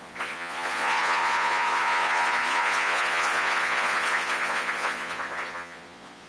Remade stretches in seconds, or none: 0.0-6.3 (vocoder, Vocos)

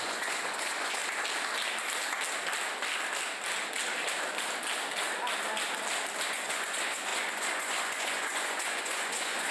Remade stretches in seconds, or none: 0.0-1.0 (vocoder, Vocos); 6.3-9.5

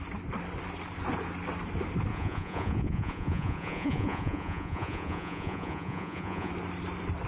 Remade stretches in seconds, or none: 2.1-6.5 (vocoder, Vocos)

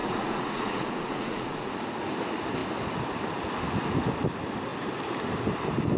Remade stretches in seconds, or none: 0.0-1.7 (vocoder, Vocos)